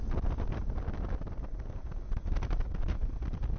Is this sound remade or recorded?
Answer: recorded